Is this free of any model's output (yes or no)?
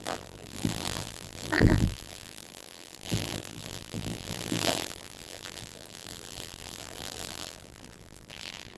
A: no